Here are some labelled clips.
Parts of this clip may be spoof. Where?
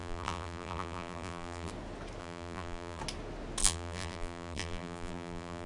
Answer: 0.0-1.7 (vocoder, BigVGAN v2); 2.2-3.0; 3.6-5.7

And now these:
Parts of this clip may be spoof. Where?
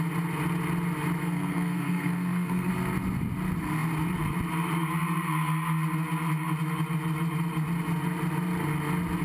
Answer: 1.2-2.7 (codec, SNAC)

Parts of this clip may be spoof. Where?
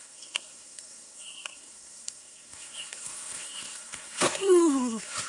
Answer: 0.0-5.3 (codec, SNAC)